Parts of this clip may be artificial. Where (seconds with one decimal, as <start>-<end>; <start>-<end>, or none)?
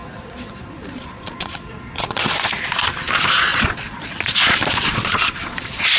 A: 0.0-2.2; 3.5-6.0